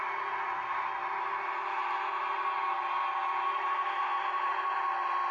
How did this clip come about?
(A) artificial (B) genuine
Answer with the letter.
B